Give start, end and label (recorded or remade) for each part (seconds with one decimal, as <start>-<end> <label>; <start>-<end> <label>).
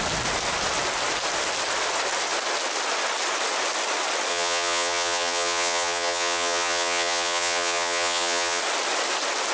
0.0-4.3 recorded; 4.3-8.6 remade; 8.6-9.5 recorded